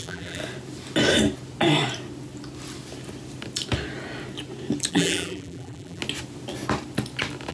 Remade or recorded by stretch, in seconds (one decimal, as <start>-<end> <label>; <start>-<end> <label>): 0.0-0.4 remade; 0.4-4.9 recorded; 4.9-6.0 remade; 6.0-7.5 recorded